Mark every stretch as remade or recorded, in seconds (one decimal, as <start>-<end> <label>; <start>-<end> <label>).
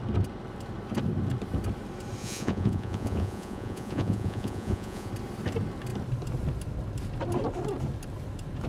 0.0-2.2 recorded; 2.2-5.1 remade; 5.1-8.7 recorded